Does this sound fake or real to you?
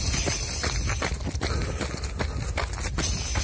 real